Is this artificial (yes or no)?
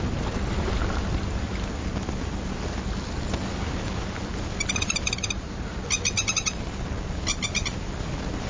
no